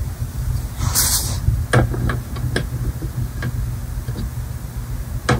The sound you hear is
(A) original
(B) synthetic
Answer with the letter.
A